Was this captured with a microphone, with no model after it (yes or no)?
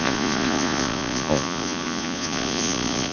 no